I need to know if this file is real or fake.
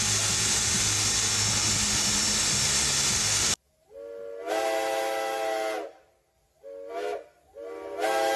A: real